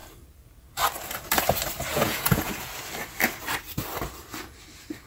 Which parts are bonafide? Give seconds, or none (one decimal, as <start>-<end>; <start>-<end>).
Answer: 0.0-1.9; 2.7-5.1